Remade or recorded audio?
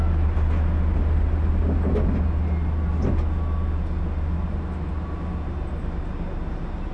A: recorded